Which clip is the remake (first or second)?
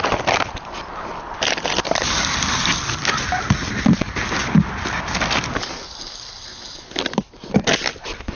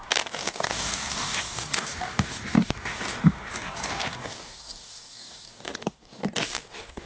second